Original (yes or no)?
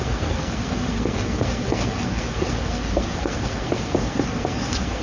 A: no